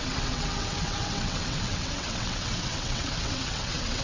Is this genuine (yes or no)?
no